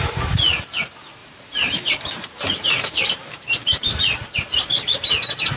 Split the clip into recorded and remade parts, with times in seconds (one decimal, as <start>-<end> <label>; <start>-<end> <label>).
0.0-1.2 recorded; 1.2-4.0 remade; 4.0-5.6 recorded